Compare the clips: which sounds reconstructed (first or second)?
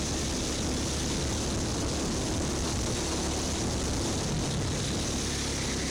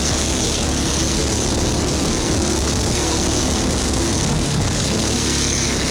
second